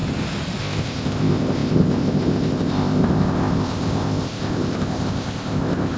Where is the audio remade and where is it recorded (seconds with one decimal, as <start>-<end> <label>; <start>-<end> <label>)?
0.0-0.6 recorded; 0.6-6.0 remade